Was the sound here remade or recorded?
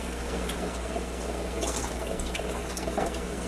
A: remade